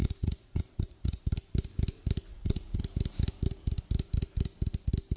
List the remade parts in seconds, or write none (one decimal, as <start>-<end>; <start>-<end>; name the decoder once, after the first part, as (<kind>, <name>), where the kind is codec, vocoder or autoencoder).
0.0-1.2 (vocoder, Vocos); 2.3-2.8